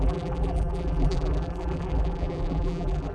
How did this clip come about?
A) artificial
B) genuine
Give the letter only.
A